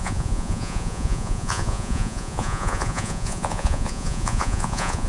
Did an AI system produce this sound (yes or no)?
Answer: yes